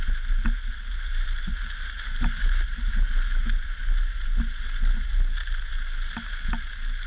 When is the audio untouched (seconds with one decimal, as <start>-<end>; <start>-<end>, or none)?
0.0-7.1